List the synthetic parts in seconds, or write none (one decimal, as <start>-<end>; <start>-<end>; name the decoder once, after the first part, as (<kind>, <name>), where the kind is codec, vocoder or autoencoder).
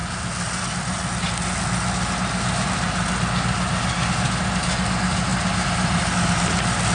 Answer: none